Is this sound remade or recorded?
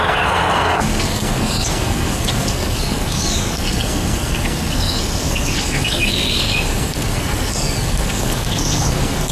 remade